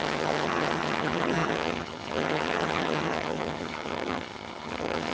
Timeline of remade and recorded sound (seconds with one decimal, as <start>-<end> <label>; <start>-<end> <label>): 0.0-5.1 remade